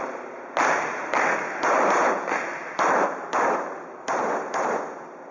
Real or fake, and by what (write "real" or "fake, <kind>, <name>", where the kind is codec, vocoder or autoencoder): real